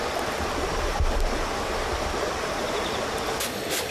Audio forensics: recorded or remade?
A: recorded